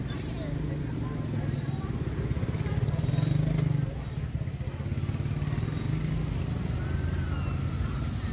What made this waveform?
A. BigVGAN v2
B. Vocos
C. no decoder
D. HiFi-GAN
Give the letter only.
C